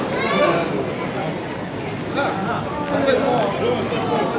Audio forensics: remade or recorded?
recorded